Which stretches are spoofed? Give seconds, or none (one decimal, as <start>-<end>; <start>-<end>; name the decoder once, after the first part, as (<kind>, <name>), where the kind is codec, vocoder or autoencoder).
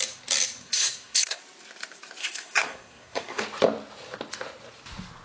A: 0.6-1.4 (codec, SNAC); 2.2-3.4